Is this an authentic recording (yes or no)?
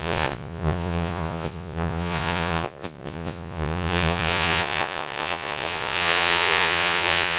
no